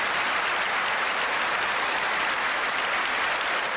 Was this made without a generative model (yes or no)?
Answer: yes